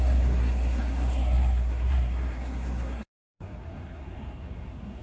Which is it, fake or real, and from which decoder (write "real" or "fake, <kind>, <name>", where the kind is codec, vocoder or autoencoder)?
fake, codec, SNAC